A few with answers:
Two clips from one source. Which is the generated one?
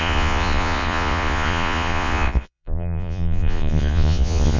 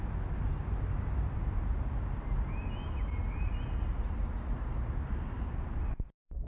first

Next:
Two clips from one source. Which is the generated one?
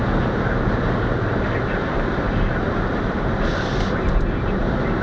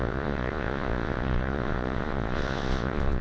second